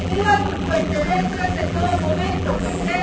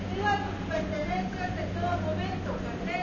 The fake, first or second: first